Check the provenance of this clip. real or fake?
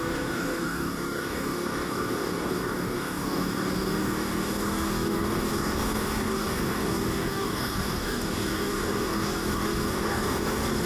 fake